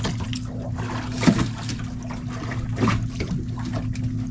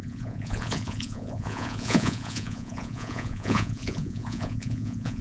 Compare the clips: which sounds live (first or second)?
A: first